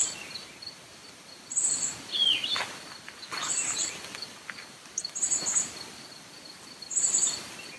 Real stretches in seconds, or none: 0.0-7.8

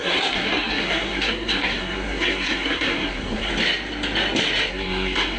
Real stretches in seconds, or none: 3.5-4.7

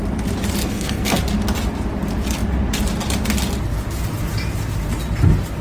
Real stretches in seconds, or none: 0.0-0.6; 1.2-5.6

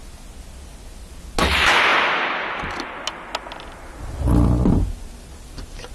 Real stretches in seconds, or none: 0.0-5.9

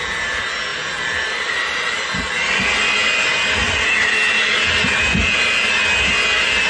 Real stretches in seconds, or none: 0.0-6.7

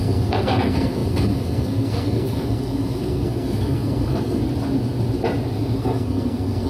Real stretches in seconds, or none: 4.4-5.8